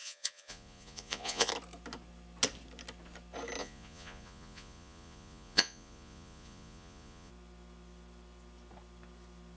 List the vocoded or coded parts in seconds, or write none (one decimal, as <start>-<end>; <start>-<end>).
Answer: 0.0-1.5; 3.6-7.3